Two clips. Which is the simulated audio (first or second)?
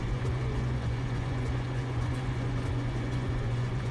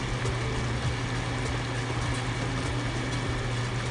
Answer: first